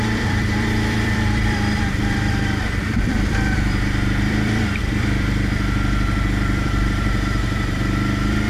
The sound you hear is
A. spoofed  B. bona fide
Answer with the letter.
A